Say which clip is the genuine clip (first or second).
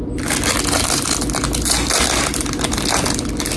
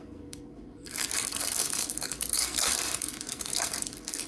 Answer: first